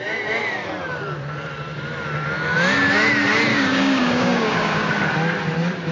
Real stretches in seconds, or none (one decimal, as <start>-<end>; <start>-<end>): 0.0-3.5; 4.9-5.9